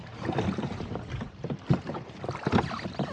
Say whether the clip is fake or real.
real